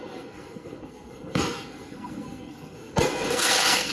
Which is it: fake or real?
fake